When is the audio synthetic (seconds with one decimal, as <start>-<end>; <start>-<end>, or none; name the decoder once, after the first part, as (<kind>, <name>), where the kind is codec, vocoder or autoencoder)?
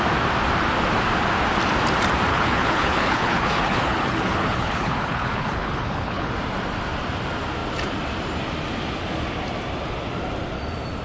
2.3-6.3 (codec, HILCodec)